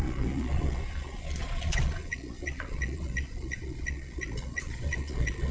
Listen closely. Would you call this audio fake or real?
fake